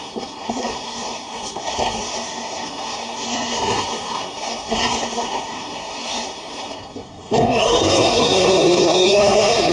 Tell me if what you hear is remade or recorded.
remade